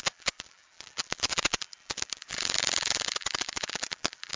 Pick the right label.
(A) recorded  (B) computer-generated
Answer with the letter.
B